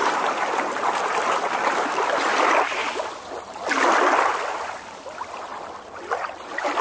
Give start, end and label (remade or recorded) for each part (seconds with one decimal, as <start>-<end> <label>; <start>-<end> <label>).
0.0-1.8 remade; 1.8-5.5 recorded; 5.5-6.8 remade